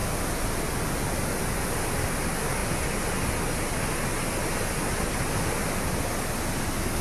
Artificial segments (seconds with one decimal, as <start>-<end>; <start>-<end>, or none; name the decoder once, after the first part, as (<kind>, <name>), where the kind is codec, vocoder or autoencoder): none